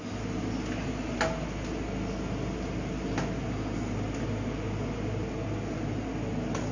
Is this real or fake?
real